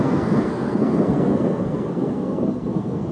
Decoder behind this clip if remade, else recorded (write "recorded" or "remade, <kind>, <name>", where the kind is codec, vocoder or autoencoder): remade, codec, SNAC